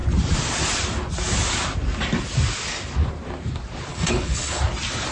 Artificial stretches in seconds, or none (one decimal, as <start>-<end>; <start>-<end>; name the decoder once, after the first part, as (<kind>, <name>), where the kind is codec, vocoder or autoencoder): 3.9-4.6 (codec, HILCodec)